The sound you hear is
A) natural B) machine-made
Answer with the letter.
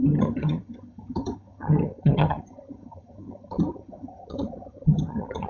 B